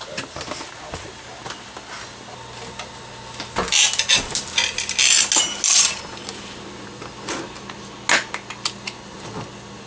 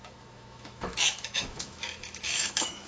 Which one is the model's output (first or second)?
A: second